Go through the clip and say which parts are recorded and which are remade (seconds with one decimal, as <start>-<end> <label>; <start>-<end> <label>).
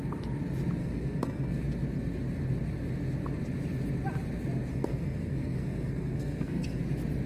0.0-0.8 recorded; 0.8-1.6 remade; 1.6-4.7 recorded; 4.7-6.8 remade; 6.8-7.3 recorded